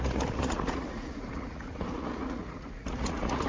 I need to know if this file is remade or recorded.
remade